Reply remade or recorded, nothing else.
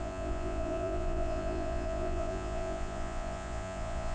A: remade